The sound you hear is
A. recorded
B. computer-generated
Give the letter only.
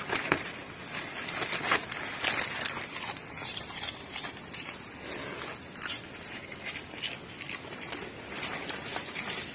A